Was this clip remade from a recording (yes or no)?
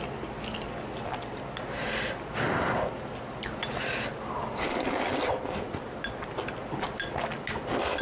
no